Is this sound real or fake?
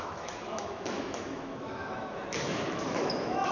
fake